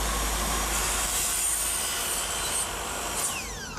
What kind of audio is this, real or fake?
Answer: real